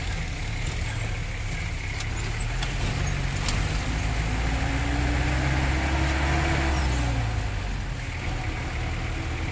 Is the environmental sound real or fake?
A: real